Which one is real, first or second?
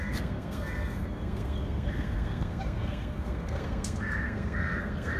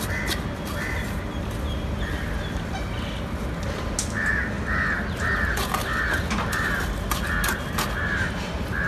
second